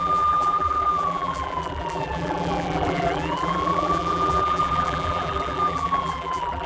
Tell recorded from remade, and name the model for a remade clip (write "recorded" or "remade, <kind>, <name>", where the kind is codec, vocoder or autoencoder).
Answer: remade, vocoder, BigVGAN v2